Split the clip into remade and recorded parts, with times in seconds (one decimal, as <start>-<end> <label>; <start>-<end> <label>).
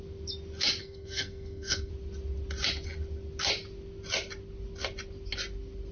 0.0-0.8 recorded; 0.8-1.9 remade; 1.9-5.9 recorded